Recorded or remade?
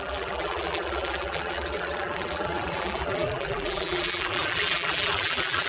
remade